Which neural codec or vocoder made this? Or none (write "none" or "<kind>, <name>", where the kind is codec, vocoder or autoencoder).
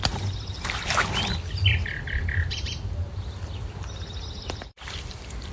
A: vocoder, BigVGAN v2